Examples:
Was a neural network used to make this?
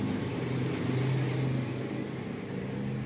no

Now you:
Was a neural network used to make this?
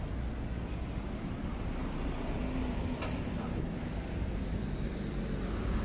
no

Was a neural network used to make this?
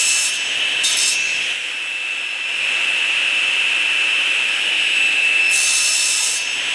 no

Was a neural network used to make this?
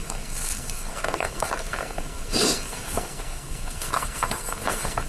yes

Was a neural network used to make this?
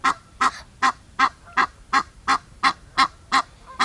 yes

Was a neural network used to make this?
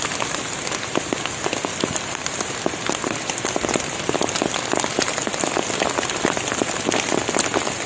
no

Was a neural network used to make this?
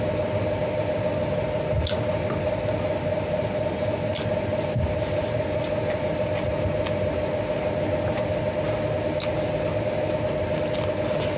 no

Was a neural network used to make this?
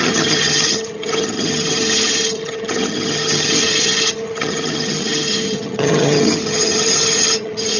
yes